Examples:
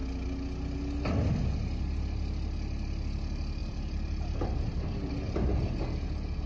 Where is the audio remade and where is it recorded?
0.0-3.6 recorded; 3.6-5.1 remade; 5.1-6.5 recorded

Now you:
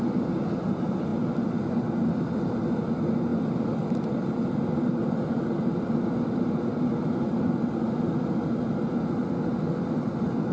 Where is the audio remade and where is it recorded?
0.0-10.5 recorded

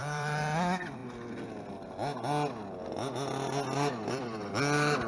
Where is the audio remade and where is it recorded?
0.0-1.0 remade; 1.0-4.1 recorded; 4.1-5.1 remade

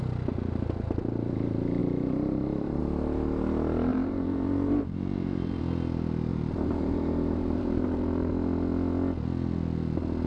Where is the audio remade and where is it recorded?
0.0-1.8 recorded; 1.8-2.8 remade; 2.8-3.9 recorded; 3.9-5.6 remade; 5.6-6.3 recorded; 6.3-8.3 remade; 8.3-10.3 recorded